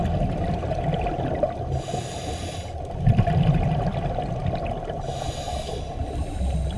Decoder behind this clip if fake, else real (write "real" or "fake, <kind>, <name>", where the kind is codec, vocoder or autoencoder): real